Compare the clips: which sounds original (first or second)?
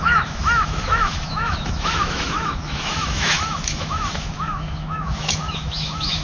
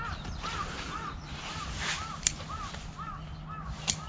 second